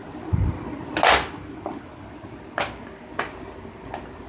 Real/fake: real